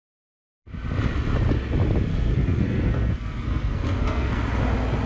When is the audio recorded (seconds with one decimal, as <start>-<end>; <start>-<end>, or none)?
0.0-2.1; 4.4-5.1